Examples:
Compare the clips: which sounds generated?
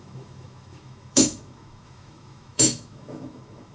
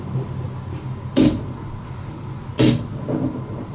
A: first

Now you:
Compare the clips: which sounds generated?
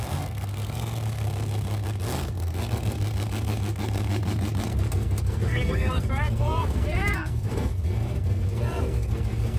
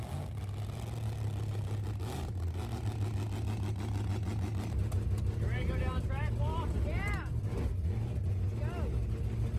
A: first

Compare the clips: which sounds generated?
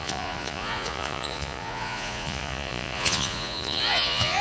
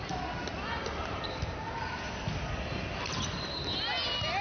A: first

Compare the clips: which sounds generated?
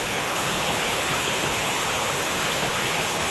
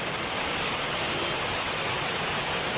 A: first